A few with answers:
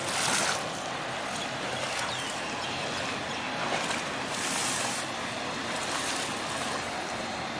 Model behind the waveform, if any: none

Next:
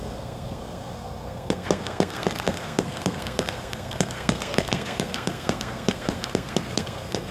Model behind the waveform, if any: codec, SNAC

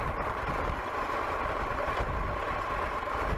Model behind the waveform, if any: none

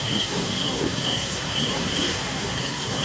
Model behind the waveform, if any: codec, SNAC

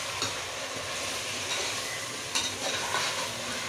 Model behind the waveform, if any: none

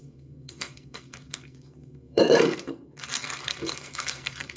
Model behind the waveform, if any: codec, SNAC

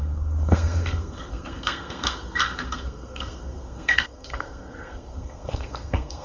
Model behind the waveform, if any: codec, SNAC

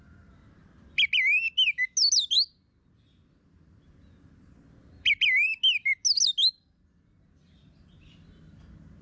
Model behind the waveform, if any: none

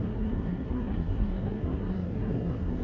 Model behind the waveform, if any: codec, SNAC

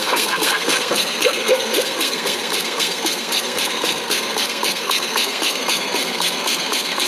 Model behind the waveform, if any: codec, SNAC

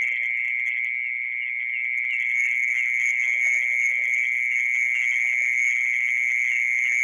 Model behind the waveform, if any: none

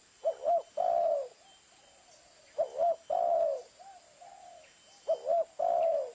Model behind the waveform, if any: none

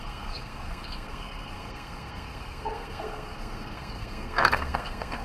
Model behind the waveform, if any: codec, SNAC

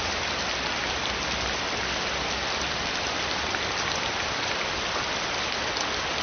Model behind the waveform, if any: none